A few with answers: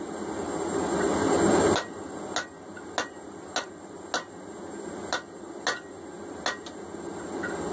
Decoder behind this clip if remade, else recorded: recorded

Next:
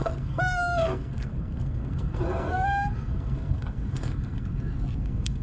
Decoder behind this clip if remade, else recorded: remade, codec, SNAC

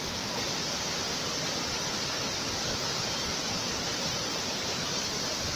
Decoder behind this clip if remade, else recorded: recorded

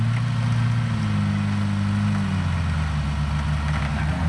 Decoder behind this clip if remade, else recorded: recorded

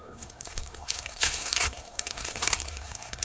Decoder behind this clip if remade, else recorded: remade, codec, SNAC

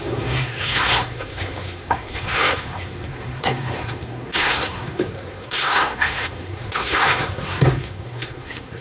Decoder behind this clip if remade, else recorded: remade, codec, SNAC